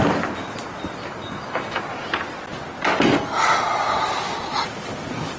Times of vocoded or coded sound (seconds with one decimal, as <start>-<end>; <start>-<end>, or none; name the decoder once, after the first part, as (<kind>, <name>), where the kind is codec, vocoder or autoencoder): 1.2-1.8 (autoencoder, DAC-VAE)

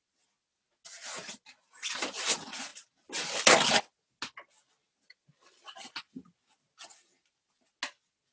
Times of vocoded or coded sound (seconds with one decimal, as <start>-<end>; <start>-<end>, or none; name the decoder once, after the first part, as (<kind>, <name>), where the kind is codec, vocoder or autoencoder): none